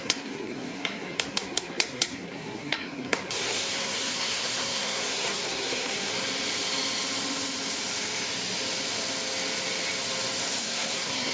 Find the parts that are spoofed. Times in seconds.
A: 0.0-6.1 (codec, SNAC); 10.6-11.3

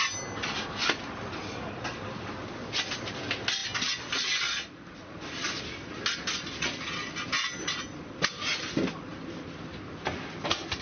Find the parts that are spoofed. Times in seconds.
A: none